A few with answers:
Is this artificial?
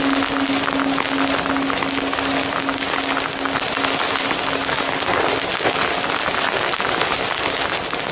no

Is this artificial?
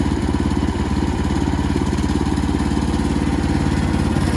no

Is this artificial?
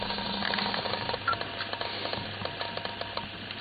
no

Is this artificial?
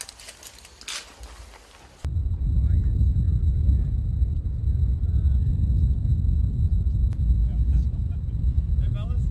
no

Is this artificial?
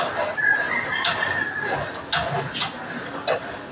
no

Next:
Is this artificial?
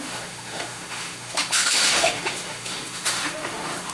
yes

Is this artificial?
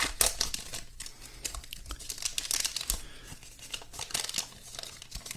no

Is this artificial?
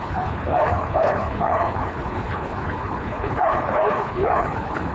yes